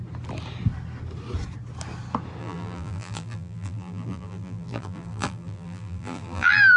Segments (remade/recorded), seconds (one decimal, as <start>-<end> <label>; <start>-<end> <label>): 0.0-2.4 recorded; 2.4-6.8 remade